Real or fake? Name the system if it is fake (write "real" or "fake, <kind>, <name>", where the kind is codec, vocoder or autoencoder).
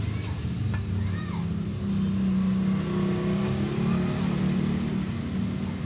real